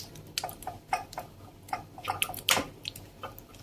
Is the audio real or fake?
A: real